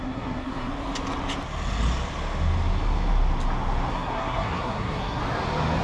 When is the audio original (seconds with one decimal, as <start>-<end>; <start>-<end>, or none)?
0.7-3.9; 5.2-5.8

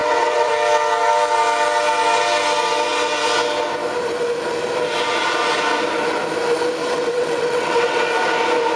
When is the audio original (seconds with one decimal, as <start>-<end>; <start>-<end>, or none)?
0.5-6.8; 8.0-8.8

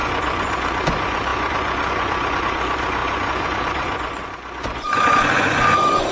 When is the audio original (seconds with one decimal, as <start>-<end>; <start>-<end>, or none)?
none

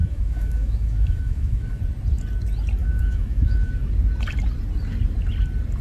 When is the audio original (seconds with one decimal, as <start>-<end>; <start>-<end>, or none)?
1.8-2.8; 3.7-5.8

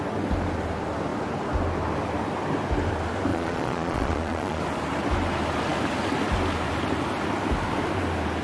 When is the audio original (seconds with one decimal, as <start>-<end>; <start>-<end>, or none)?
0.0-3.3; 4.6-8.4

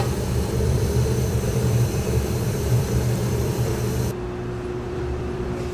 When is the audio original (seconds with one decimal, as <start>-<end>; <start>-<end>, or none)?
3.7-4.9

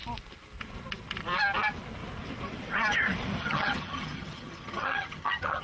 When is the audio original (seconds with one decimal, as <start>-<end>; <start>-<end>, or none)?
0.0-3.4

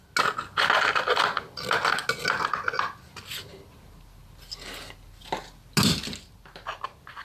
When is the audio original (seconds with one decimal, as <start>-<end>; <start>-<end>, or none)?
0.0-7.2